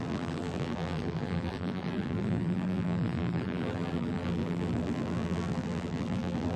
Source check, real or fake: fake